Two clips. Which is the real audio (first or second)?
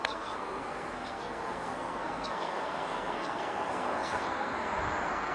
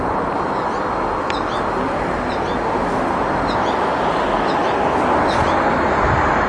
second